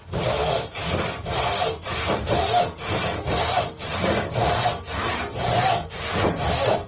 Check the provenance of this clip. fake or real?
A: fake